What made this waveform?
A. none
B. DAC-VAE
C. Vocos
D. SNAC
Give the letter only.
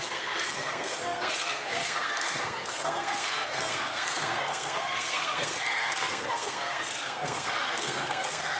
D